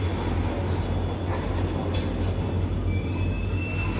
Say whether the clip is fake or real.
real